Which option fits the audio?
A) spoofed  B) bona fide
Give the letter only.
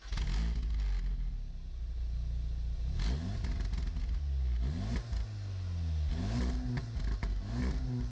B